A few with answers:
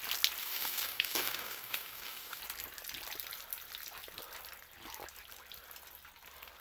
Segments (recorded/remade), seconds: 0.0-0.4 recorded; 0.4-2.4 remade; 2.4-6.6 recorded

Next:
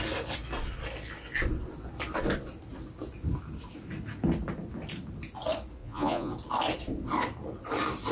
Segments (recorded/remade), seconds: 0.0-5.8 recorded; 5.8-6.3 remade; 6.3-8.1 recorded

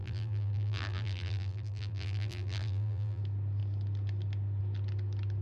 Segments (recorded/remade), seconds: 0.0-3.2 remade; 3.2-5.4 recorded

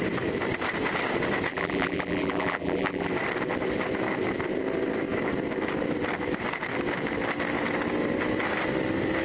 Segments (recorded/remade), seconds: 0.0-1.5 recorded; 1.5-3.1 remade; 3.1-9.2 recorded

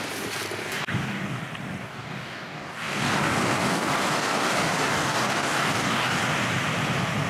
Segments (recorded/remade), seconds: 0.0-0.6 recorded; 0.6-1.4 remade; 1.4-1.8 recorded; 1.8-6.2 remade; 6.2-7.3 recorded

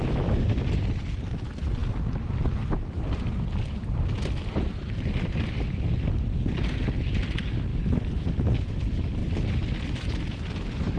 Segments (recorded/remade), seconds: 0.0-7.7 recorded; 7.7-8.3 remade; 8.3-11.0 recorded

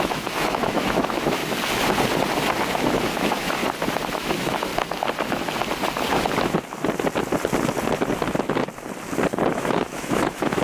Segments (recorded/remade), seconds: 0.0-1.4 remade; 1.4-2.7 recorded; 2.7-3.6 remade; 3.6-4.1 recorded; 4.1-4.7 remade; 4.7-9.5 recorded; 9.5-10.6 remade

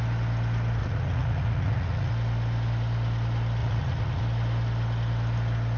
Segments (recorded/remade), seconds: 0.0-0.8 recorded; 0.8-2.1 remade; 2.1-3.6 recorded; 3.6-4.2 remade; 4.2-5.8 recorded